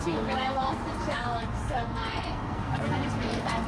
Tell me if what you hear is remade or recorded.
remade